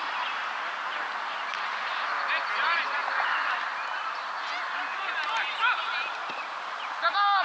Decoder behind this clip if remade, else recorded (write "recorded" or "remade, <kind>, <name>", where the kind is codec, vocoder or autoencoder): recorded